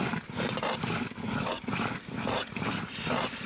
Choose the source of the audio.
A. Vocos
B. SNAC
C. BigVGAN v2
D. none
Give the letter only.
D